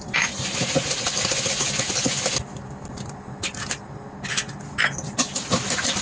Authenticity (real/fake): real